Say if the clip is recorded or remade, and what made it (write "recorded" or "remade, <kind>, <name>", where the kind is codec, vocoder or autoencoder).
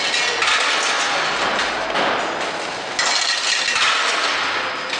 recorded